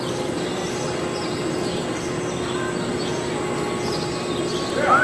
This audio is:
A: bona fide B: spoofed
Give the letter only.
A